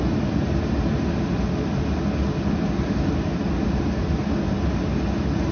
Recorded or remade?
recorded